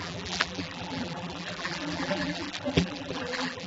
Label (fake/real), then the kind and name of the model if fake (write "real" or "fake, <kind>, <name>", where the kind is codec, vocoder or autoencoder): fake, vocoder, BigVGAN v2